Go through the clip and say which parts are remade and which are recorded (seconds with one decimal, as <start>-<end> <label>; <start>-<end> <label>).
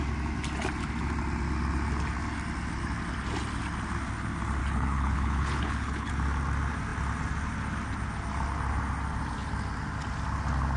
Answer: 0.0-4.6 recorded; 4.6-6.1 remade; 6.1-10.8 recorded